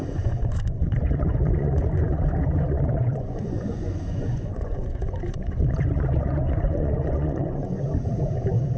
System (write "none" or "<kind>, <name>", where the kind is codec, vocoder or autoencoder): vocoder, Vocos